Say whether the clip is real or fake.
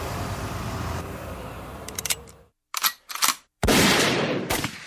fake